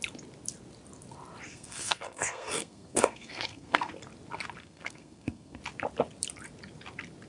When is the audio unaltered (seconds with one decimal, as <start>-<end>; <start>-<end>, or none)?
0.0-1.5; 3.9-4.6; 5.6-7.3